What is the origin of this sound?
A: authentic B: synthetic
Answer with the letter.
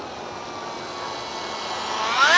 A